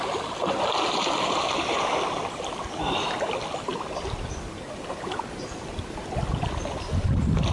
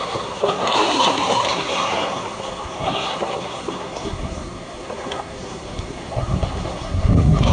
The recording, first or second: first